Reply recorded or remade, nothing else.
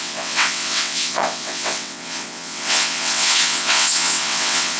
remade